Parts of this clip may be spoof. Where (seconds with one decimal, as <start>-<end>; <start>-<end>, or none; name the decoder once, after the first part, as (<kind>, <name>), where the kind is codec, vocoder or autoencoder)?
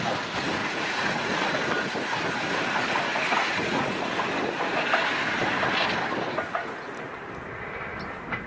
0.6-1.5 (vocoder, Vocos); 3.4-4.1